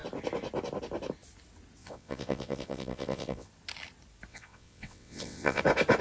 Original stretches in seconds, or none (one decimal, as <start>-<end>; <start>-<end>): 0.0-1.8; 3.5-4.3; 5.6-6.0